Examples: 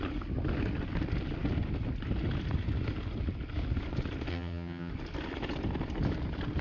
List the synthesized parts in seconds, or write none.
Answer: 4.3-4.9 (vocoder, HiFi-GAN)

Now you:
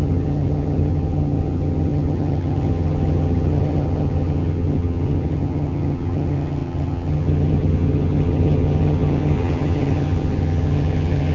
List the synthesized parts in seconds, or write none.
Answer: 0.0-11.3 (vocoder, HiFi-GAN)

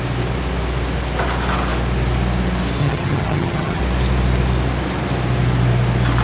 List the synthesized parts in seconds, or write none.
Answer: 2.8-3.8 (vocoder, HiFi-GAN)

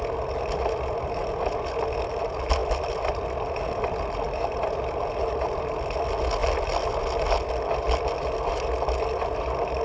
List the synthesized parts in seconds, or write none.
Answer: none

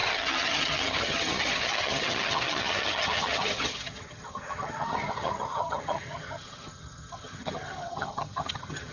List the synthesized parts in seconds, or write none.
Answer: 0.0-8.9 (vocoder, HiFi-GAN)

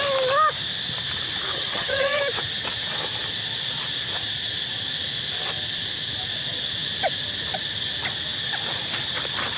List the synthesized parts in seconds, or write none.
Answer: 1.5-2.2 (vocoder, HiFi-GAN)

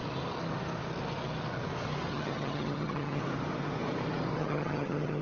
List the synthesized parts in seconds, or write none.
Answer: 2.1-3.2 (vocoder, HiFi-GAN); 4.4-5.2